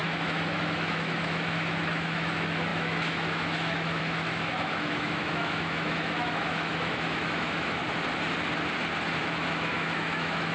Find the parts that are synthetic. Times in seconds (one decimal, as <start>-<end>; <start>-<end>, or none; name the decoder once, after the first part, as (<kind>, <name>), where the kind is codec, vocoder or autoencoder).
0.0-7.8 (autoencoder, DAC-VAE); 9.2-10.5